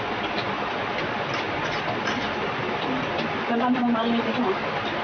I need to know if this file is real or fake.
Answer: real